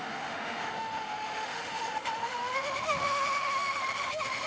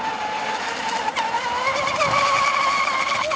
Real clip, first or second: second